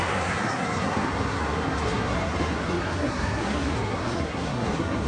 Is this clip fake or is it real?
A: fake